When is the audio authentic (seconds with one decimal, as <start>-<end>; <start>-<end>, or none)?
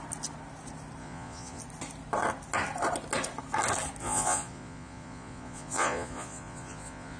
0.0-1.0; 1.6-4.0